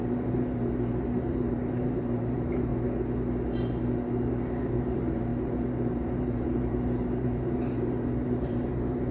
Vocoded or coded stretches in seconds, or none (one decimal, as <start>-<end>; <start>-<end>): 0.0-2.7; 4.6-9.1